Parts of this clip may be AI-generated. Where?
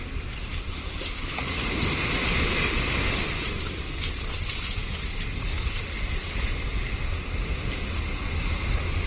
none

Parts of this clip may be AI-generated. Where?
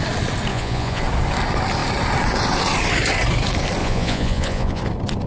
0.5-1.0 (vocoder, Vocos); 3.8-4.8